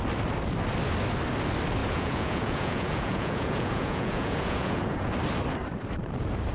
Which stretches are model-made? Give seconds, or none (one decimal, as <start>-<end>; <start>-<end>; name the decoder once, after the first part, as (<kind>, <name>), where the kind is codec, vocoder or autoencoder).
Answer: 1.8-5.1 (vocoder, Vocos)